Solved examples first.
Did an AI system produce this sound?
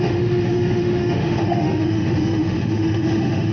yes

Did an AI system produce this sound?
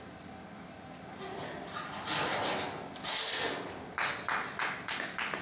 no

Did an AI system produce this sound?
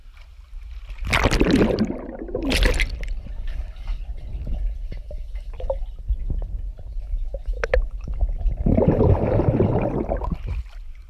no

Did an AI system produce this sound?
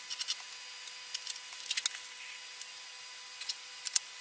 no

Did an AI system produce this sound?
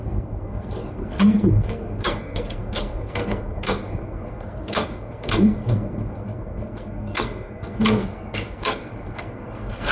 yes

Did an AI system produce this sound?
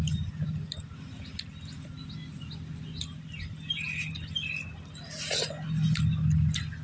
no